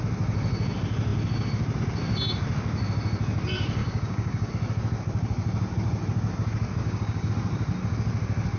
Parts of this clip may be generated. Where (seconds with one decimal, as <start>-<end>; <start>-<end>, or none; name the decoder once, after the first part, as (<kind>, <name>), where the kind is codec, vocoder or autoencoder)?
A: 3.8-4.5 (codec, DAC); 6.8-7.3